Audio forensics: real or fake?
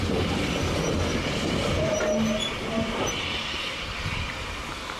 real